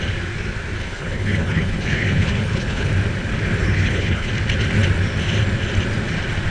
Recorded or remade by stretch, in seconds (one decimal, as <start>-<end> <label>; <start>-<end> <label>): 0.0-0.8 recorded; 0.8-2.9 remade; 2.9-3.6 recorded; 3.6-4.3 remade; 4.3-6.5 recorded